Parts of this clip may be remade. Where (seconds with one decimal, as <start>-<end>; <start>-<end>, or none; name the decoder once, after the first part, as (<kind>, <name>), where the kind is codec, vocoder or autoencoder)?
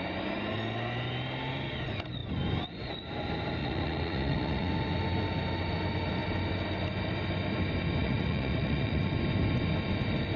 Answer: 3.6-4.7 (vocoder, Vocos); 8.0-9.0